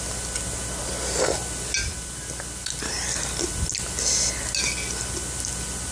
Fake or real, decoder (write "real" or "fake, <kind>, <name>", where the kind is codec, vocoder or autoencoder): real